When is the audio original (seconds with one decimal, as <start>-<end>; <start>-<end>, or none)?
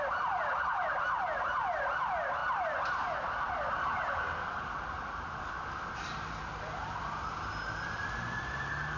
0.0-9.0